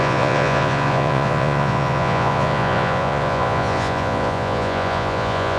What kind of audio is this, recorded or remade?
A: remade